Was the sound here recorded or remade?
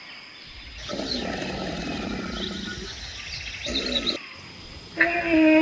recorded